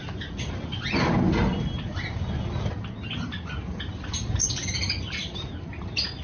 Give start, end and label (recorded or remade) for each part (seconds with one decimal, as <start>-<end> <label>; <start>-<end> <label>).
0.0-1.9 remade; 1.9-4.9 recorded; 4.9-6.2 remade